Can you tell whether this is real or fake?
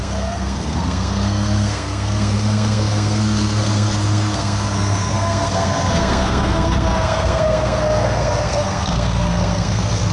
fake